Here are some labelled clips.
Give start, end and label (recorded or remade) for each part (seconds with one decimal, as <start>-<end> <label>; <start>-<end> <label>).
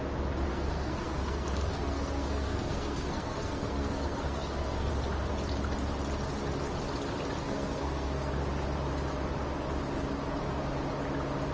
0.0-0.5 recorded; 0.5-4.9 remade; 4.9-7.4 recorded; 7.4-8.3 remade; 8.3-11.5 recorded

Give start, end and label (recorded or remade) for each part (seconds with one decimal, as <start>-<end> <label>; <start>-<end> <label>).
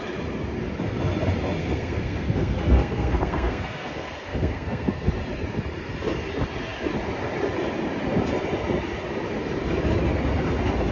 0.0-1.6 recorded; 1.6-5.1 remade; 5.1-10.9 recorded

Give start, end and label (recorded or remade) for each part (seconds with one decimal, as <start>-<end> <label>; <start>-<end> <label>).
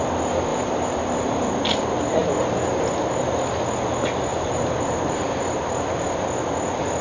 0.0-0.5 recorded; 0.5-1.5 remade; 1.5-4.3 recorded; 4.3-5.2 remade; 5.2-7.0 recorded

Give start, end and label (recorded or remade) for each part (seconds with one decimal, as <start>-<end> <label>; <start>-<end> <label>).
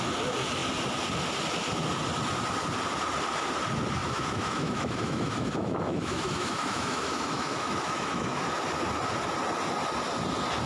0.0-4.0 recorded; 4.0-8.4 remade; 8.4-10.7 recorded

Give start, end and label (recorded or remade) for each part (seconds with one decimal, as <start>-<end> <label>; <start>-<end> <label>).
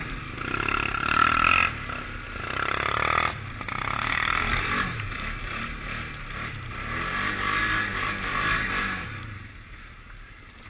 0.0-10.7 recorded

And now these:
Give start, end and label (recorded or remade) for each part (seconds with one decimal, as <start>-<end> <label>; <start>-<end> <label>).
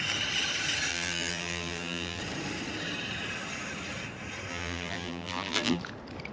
0.0-0.9 recorded; 0.9-2.2 remade; 2.2-4.5 recorded; 4.5-5.8 remade; 5.8-6.3 recorded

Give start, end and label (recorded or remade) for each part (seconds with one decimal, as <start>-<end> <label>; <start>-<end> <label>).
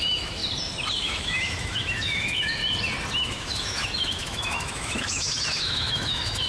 0.0-0.4 remade; 0.4-1.0 recorded; 1.0-2.6 remade; 2.6-3.2 recorded; 3.2-6.5 remade